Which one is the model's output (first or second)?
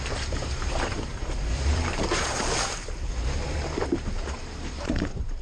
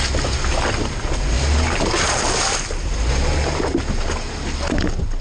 first